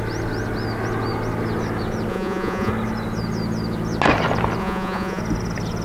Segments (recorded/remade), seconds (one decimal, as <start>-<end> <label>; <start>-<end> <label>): 0.0-2.1 recorded; 2.1-2.7 remade; 2.7-4.6 recorded; 4.6-5.2 remade; 5.2-5.8 recorded